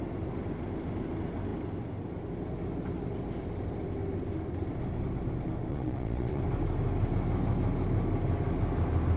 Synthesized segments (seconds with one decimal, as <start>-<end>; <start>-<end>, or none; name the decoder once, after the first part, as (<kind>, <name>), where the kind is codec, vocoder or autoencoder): 5.7-6.4 (vocoder, Vocos)